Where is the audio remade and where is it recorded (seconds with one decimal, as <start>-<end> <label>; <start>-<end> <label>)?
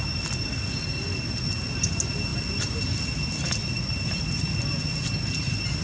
0.0-5.8 recorded